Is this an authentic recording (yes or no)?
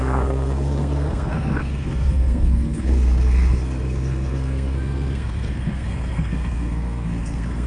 no